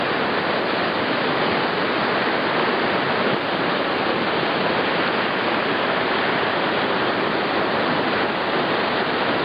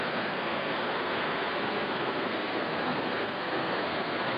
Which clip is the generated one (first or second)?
second